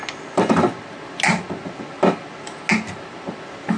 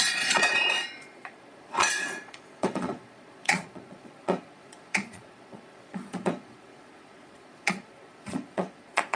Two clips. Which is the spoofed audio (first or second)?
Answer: second